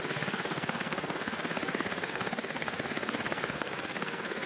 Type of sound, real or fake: fake